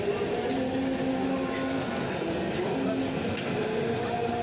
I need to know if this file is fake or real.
real